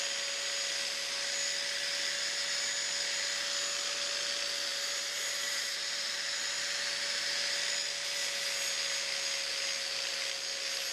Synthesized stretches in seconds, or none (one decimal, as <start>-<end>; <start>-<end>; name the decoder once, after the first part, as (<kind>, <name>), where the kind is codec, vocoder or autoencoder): 4.7-6.1 (vocoder, BigVGAN v2)